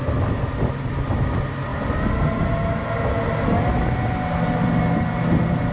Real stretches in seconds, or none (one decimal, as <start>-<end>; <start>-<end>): 0.0-5.7

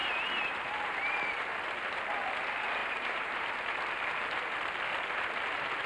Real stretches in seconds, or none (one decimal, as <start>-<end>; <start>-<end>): 1.4-2.8; 3.6-5.9

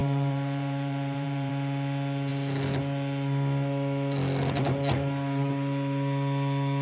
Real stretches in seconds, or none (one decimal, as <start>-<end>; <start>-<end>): 1.5-6.8

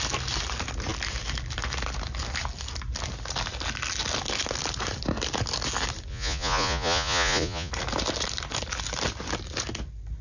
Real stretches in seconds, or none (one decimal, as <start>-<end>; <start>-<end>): 0.0-6.1; 7.7-10.2